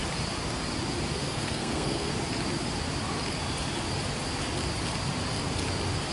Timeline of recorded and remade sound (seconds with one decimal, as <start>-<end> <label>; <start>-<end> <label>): 0.0-1.1 recorded; 1.1-2.1 remade; 2.1-6.1 recorded